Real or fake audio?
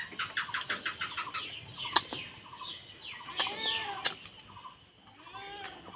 real